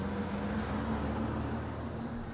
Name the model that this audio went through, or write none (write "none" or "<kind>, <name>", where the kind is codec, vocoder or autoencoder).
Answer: none